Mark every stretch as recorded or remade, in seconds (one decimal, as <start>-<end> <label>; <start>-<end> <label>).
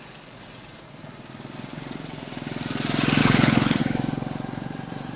0.0-3.2 recorded; 3.2-3.8 remade; 3.8-5.2 recorded